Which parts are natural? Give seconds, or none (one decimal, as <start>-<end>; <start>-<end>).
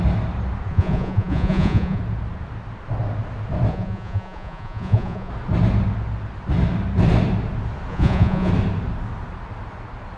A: 0.0-0.7; 2.0-3.7; 5.3-7.9; 8.5-10.2